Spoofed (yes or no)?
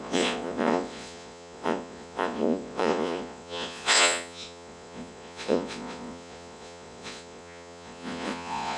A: yes